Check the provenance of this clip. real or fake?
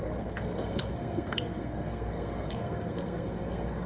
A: fake